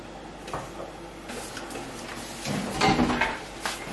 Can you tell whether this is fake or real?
real